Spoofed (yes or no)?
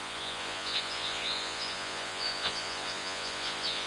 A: yes